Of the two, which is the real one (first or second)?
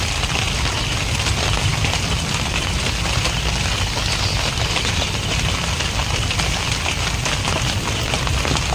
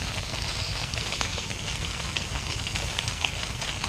first